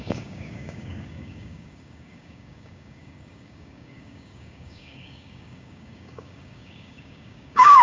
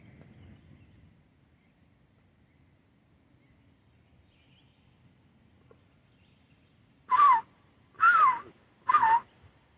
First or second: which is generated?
first